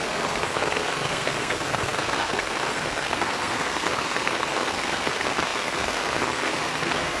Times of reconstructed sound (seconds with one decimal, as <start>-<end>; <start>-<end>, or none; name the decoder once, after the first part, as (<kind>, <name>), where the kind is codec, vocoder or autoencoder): 0.0-7.2 (codec, SNAC)